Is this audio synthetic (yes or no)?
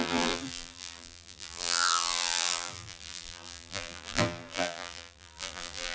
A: yes